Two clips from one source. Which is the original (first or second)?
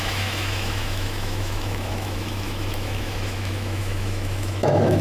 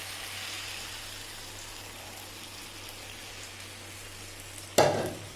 second